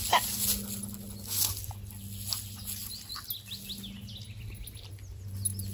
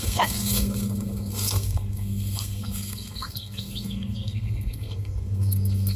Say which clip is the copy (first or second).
second